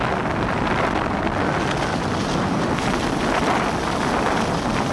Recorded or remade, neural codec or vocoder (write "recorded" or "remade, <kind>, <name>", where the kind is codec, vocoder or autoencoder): recorded